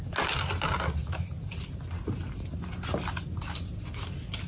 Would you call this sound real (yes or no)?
yes